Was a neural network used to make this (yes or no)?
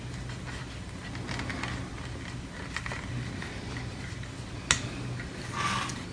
no